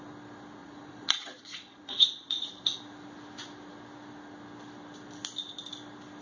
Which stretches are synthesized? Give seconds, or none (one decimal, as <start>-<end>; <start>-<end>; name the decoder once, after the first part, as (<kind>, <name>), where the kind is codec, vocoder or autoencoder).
0.6-2.8 (vocoder, Vocos)